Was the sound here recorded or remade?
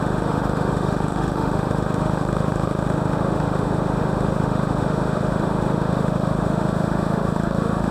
remade